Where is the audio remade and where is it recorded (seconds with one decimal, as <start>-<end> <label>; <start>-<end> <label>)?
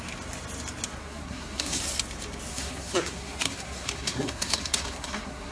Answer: 0.0-1.0 recorded; 1.0-1.8 remade; 1.8-2.5 recorded; 2.5-5.5 remade